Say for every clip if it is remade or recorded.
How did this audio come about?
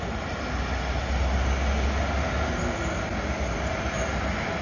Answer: recorded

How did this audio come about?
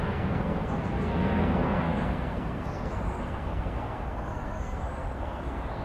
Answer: remade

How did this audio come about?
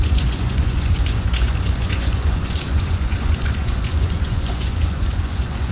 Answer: remade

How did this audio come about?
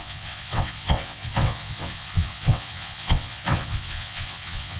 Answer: remade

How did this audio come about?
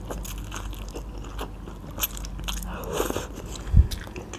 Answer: recorded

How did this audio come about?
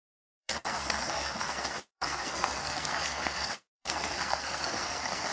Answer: remade